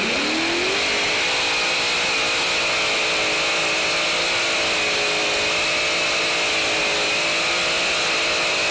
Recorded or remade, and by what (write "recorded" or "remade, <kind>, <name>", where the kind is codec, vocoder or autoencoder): recorded